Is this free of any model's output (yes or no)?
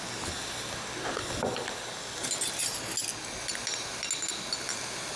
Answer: yes